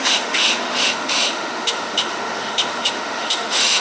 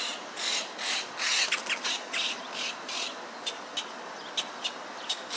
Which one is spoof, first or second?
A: first